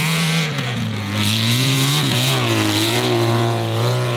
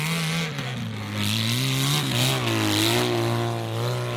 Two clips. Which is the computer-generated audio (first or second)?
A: first